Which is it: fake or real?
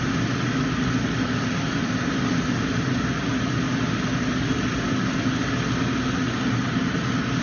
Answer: real